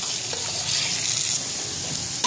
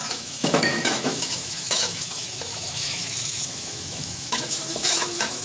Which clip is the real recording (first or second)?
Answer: first